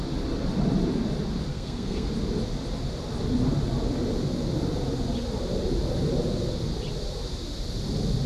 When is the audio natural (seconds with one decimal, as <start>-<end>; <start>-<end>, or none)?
0.0-1.5; 2.1-8.3